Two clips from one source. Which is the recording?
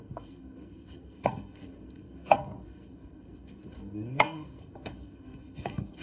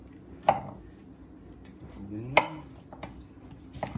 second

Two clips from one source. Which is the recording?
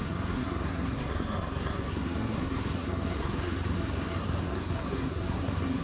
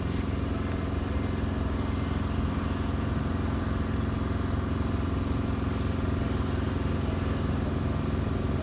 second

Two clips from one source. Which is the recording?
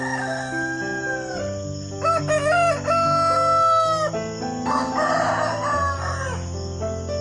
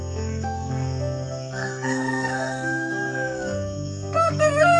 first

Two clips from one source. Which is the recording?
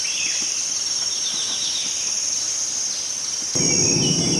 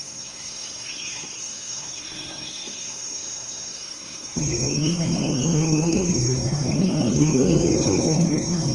first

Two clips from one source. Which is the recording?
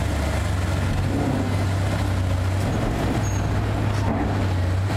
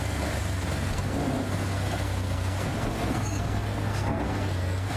first